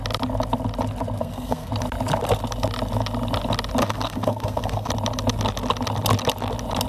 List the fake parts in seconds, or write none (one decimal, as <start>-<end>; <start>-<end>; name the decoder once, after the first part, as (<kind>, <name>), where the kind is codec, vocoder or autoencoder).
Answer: 1.2-1.7 (codec, SNAC); 3.8-4.9